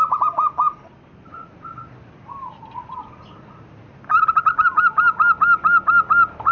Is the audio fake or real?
real